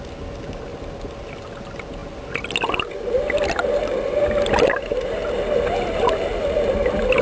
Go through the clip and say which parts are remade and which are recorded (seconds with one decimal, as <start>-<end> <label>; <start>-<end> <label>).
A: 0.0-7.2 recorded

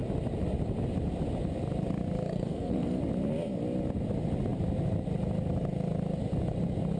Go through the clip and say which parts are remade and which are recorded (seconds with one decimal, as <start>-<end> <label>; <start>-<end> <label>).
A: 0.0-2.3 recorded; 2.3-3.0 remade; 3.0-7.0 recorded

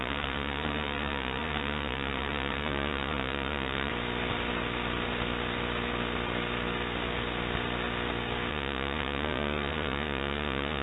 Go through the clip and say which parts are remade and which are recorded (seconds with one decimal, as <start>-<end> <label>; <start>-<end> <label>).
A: 0.0-3.9 remade; 3.9-8.5 recorded; 8.5-10.8 remade

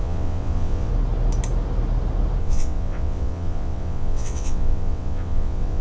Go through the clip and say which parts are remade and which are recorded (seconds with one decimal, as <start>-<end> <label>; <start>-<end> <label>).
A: 0.0-0.9 remade; 0.9-2.4 recorded; 2.4-5.8 remade

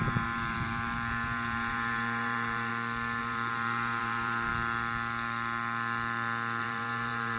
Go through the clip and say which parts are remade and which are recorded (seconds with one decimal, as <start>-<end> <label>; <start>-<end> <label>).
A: 0.0-2.7 remade; 2.7-3.2 recorded; 3.2-4.5 remade; 4.5-6.6 recorded; 6.6-7.4 remade

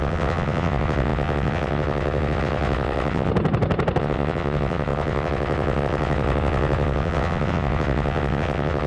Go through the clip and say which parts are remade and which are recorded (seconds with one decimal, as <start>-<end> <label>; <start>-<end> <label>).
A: 0.0-3.3 remade; 3.3-4.0 recorded; 4.0-8.9 remade

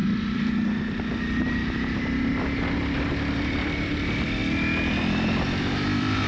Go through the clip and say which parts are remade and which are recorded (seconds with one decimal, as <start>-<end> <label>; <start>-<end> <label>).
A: 0.0-4.4 remade; 4.4-5.0 recorded; 5.0-6.3 remade